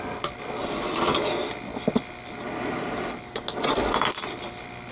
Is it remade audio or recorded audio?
recorded